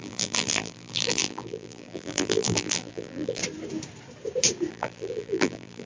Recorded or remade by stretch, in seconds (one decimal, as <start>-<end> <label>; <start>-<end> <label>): 0.0-3.4 remade; 3.4-4.7 recorded; 4.7-5.9 remade